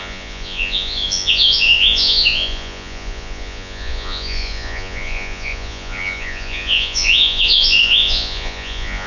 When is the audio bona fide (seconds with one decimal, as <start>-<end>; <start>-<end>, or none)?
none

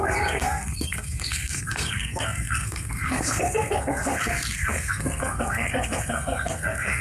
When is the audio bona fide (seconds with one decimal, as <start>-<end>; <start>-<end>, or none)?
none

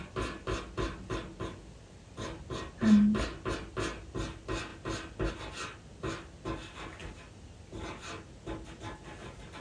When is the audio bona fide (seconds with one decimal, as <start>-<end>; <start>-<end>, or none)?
0.0-9.6

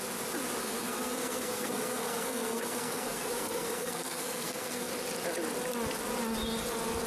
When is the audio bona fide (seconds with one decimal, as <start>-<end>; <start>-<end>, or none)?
0.0-0.6; 4.9-7.1